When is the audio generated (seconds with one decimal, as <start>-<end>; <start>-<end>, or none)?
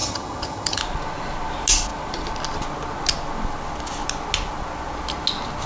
0.0-0.8